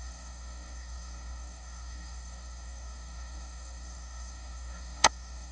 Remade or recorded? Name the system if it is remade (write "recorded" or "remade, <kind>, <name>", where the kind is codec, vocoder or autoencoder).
remade, codec, DAC